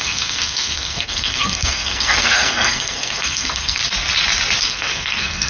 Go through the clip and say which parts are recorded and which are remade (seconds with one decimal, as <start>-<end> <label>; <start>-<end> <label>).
0.0-3.8 remade; 3.8-4.6 recorded; 4.6-5.5 remade